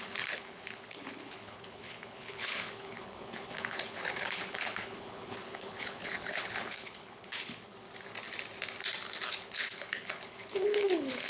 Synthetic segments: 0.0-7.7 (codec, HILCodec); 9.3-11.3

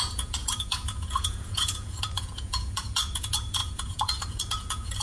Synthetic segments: 0.0-5.0 (vocoder, Vocos)

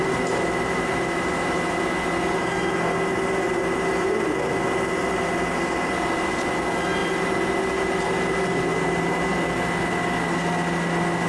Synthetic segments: 8.7-9.2 (vocoder, BigVGAN v2)

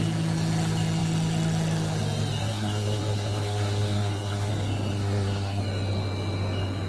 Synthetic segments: 2.4-4.5 (codec, SNAC); 4.9-5.6

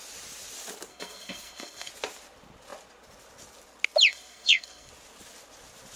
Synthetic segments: 0.9-1.9 (codec, SNAC); 4.1-4.9

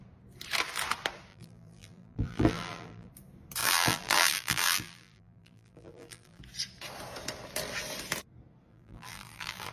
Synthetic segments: 1.3-3.1 (vocoder, BigVGAN v2); 3.6-6.4; 8.7-9.7

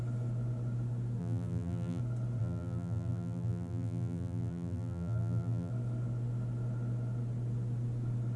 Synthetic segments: 1.2-2.0 (vocoder, BigVGAN v2); 2.4-5.7

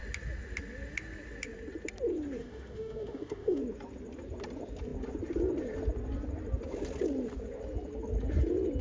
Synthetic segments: 2.4-3.6 (autoencoder, DAC-VAE)